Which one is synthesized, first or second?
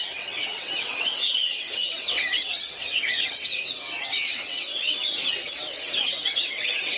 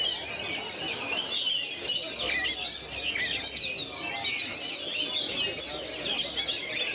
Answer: first